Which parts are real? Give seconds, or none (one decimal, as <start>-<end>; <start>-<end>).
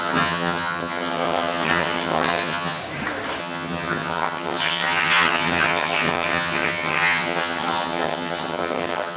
2.8-3.4